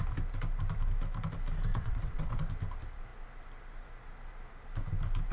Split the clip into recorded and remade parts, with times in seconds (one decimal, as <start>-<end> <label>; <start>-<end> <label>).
0.0-1.7 recorded; 1.7-2.5 remade; 2.5-5.3 recorded